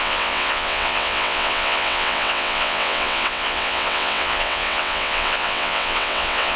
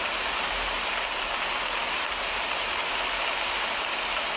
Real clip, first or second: second